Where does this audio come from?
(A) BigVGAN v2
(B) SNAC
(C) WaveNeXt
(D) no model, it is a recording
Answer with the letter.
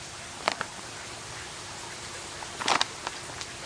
D